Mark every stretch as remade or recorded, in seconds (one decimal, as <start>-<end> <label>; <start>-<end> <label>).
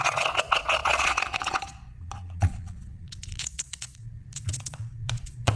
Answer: 0.0-5.6 remade